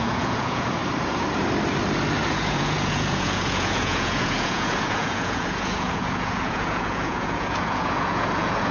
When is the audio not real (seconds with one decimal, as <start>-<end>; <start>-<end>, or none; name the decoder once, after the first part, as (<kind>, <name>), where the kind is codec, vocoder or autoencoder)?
0.0-0.8 (vocoder, Vocos); 2.3-8.7